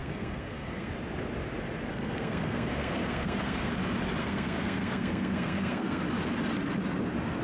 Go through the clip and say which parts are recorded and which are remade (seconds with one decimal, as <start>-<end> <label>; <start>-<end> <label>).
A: 0.0-0.9 remade; 0.9-1.9 recorded; 1.9-3.7 remade; 3.7-4.2 recorded; 4.2-6.0 remade; 6.0-7.4 recorded